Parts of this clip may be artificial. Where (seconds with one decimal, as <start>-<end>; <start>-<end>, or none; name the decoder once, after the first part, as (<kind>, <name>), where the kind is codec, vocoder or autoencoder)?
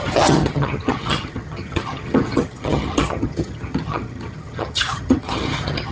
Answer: 0.0-5.9 (vocoder, HiFi-GAN)